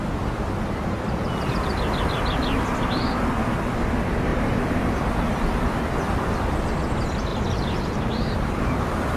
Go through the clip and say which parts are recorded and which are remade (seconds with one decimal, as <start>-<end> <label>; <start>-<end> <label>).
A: 0.0-4.3 recorded; 4.3-4.8 remade; 4.8-7.3 recorded; 7.3-8.6 remade; 8.6-9.2 recorded